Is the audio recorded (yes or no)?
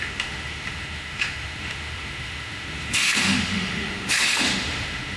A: no